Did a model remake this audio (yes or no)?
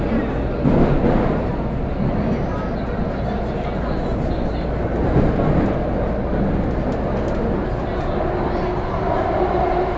no